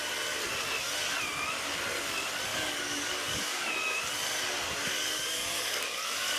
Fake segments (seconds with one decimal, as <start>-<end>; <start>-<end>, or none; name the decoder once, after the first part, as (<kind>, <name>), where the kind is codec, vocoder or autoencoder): 2.5-3.7 (codec, DAC); 4.8-6.4

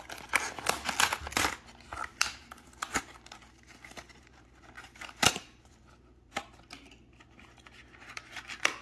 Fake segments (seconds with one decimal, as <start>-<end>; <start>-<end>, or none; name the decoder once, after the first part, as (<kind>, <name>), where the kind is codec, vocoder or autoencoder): 2.1-6.3 (vocoder, BigVGAN v2)

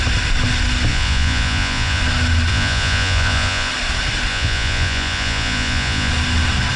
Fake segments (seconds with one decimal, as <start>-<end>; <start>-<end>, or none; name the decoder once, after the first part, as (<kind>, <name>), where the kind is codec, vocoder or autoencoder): 0.9-2.0 (vocoder, Vocos); 2.5-3.7; 4.3-6.1

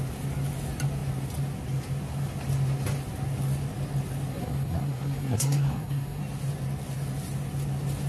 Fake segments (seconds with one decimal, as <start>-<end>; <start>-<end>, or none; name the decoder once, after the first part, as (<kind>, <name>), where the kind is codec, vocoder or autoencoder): 4.3-6.2 (codec, SNAC)

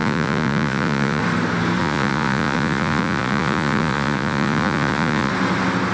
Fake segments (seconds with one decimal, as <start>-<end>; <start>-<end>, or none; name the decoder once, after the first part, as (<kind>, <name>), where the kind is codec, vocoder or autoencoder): 0.0-1.2 (vocoder, Vocos); 1.8-5.3

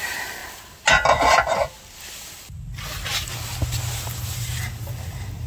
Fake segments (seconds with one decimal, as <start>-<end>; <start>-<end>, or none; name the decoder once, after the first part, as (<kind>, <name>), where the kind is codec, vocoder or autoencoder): none